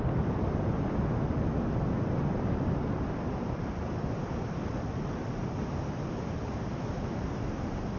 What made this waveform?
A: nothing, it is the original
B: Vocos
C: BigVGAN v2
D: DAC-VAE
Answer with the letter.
A